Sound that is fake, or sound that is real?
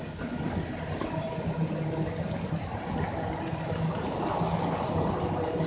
real